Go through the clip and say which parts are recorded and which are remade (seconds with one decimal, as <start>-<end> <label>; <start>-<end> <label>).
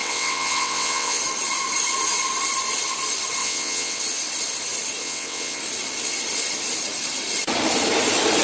0.0-1.2 remade; 1.2-3.4 recorded; 3.4-4.0 remade; 4.0-5.0 recorded; 5.0-5.6 remade; 5.6-8.4 recorded